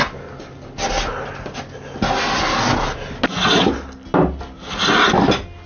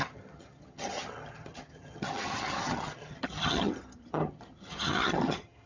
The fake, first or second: second